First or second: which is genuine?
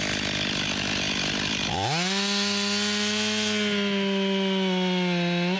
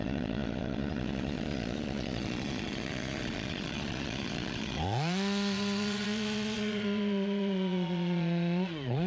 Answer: first